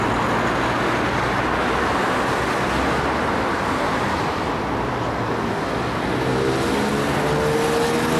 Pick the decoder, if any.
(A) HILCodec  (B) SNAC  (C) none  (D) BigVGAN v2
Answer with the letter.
C